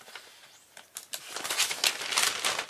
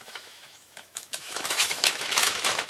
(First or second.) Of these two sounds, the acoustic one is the first